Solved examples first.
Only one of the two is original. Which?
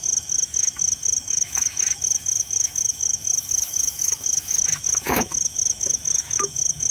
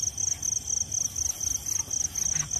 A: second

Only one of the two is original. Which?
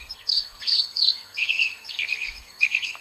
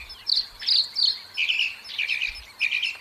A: second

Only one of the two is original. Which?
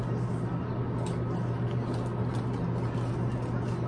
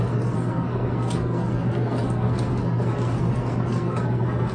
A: first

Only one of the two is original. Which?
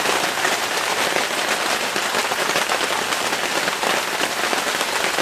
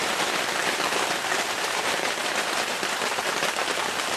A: first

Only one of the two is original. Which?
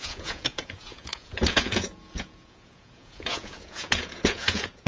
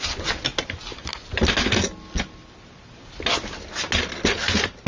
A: second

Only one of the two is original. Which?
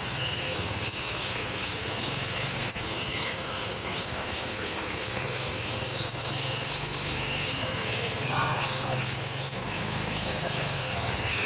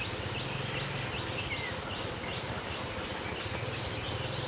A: second